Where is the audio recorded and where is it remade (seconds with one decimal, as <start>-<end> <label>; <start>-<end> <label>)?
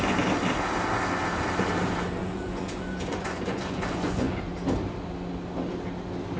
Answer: 0.0-2.2 recorded; 2.2-4.4 remade; 4.4-6.4 recorded